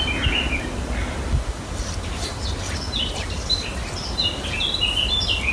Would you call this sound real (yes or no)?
yes